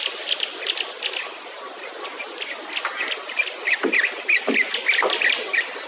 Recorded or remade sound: recorded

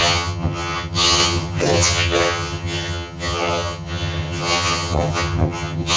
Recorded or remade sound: remade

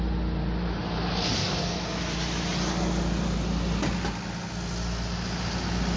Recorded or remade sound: recorded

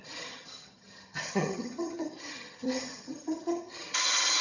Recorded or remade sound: remade